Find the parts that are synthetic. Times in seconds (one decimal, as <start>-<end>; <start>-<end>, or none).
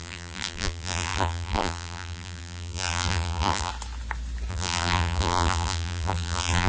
0.0-3.7; 4.5-6.7